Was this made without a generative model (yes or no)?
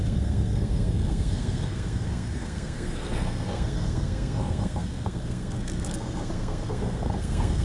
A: no